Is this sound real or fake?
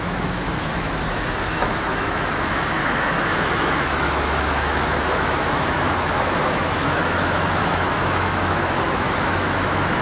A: fake